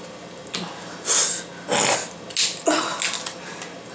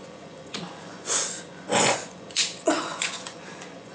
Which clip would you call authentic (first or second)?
first